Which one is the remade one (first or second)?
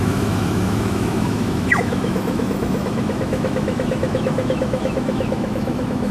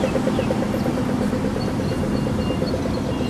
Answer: first